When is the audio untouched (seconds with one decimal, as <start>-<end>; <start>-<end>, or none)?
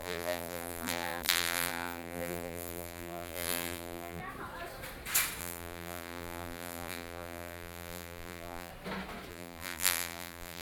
4.2-5.4; 8.7-9.3